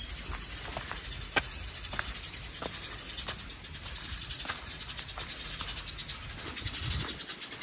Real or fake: real